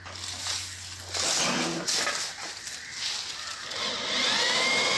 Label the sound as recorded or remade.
recorded